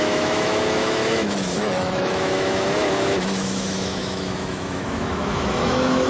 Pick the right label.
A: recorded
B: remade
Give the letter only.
B